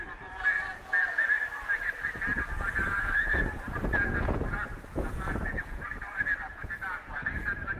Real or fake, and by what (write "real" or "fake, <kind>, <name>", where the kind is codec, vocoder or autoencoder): fake, vocoder, Vocos